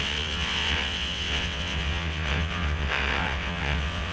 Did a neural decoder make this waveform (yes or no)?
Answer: yes